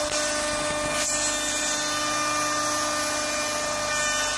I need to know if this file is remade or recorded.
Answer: recorded